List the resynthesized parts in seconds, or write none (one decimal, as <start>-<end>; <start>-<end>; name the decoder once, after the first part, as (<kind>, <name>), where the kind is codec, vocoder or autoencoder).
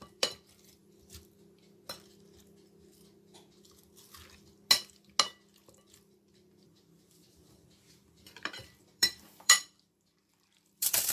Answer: 0.0-0.8 (vocoder, BigVGAN v2); 5.7-11.1